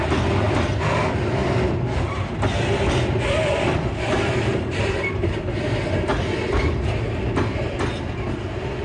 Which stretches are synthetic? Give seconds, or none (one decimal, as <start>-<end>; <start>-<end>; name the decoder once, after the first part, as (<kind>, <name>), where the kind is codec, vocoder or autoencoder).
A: 1.4-4.9 (vocoder, BigVGAN v2)